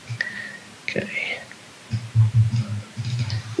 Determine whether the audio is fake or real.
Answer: fake